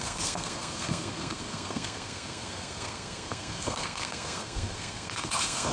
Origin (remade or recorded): remade